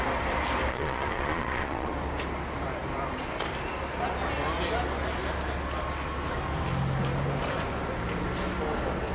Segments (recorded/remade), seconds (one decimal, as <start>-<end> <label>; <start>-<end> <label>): 0.0-0.7 recorded; 0.7-1.9 remade; 1.9-9.1 recorded